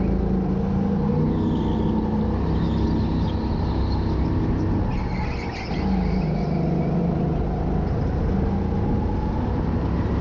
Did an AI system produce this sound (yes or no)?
no